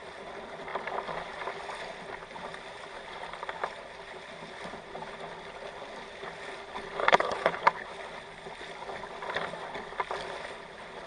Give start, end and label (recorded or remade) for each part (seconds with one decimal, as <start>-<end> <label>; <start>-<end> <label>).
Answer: 0.0-7.0 recorded; 7.0-7.6 remade; 7.6-11.1 recorded